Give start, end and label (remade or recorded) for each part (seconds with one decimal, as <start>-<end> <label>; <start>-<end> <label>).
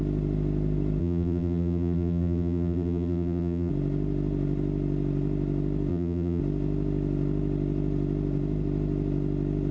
0.0-1.0 recorded; 1.0-3.7 remade; 3.7-5.9 recorded; 5.9-6.4 remade; 6.4-9.7 recorded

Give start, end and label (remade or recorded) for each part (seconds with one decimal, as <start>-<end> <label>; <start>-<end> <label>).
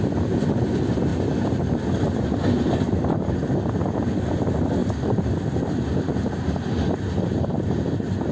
0.0-8.3 recorded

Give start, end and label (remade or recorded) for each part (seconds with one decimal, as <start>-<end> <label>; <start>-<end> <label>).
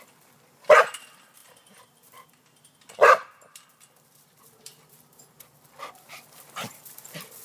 0.0-7.4 remade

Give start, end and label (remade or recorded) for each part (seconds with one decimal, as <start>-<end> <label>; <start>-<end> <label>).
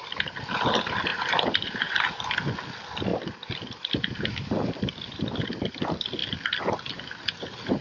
0.0-1.1 recorded; 1.1-2.0 remade; 2.0-3.1 recorded; 3.1-4.9 remade; 4.9-7.8 recorded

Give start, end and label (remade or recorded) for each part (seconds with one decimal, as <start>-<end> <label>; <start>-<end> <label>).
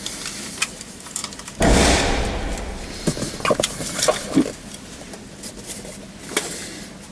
0.0-7.1 remade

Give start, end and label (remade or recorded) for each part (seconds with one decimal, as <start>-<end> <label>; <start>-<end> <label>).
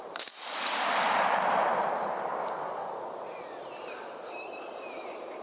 0.0-1.7 remade; 1.7-4.2 recorded; 4.2-5.4 remade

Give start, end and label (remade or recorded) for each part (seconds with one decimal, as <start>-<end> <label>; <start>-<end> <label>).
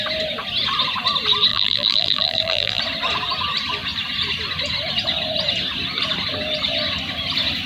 0.0-1.5 recorded; 1.5-2.8 remade; 2.8-7.7 recorded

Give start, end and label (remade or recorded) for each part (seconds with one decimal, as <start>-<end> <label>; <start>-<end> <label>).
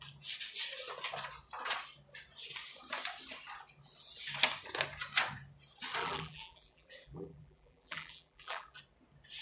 0.0-6.0 recorded; 6.0-8.8 remade; 8.8-9.4 recorded